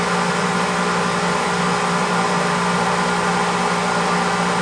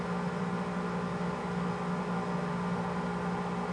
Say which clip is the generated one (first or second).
first